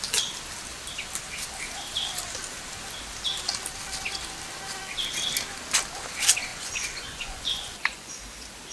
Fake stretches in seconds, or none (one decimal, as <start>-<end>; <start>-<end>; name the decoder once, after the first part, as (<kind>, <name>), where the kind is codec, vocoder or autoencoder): 6.5-8.2 (vocoder, Vocos)